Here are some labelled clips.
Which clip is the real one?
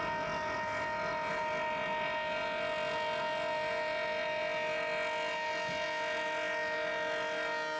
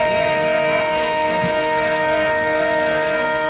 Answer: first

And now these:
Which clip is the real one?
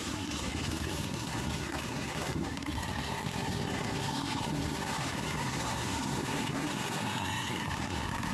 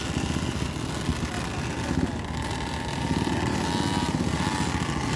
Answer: second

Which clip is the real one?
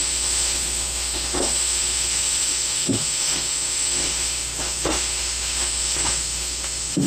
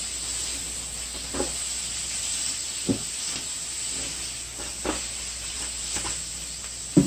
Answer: second